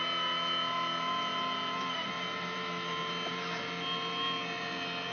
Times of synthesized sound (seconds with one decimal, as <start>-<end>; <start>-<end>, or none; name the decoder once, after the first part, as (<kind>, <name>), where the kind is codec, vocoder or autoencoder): none